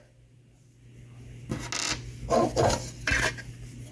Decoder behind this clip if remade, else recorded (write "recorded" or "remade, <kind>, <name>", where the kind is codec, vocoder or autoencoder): recorded